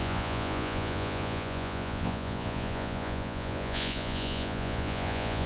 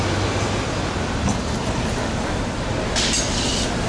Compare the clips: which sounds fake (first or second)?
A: first